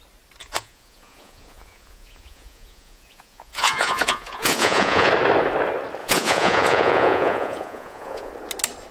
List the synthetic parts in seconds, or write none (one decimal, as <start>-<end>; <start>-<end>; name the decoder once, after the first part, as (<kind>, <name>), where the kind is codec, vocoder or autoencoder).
0.4-5.1 (vocoder, Vocos); 6.0-8.3